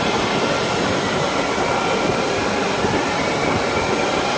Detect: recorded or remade recorded